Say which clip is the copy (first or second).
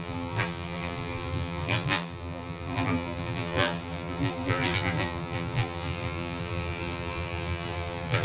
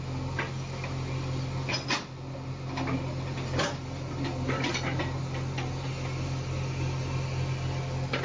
first